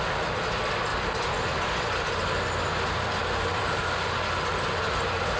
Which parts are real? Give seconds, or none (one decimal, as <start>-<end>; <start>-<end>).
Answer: 0.0-0.9; 2.1-4.5